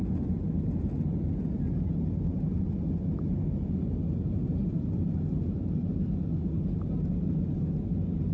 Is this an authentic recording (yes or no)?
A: yes